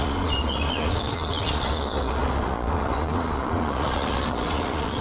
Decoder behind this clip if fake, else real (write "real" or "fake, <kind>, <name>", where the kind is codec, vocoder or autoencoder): fake, vocoder, Vocos